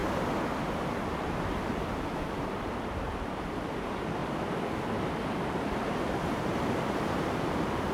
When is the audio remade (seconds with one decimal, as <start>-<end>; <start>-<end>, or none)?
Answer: 0.6-4.2; 5.0-7.9